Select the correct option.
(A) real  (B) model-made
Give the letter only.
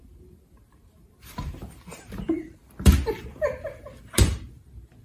B